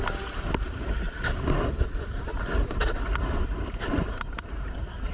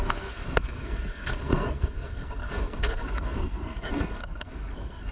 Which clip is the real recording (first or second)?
first